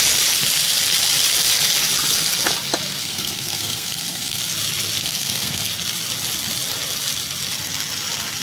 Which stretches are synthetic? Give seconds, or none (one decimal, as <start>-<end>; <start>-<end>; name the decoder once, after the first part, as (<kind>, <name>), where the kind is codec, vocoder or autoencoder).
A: 3.0-4.4 (codec, SNAC); 5.0-5.7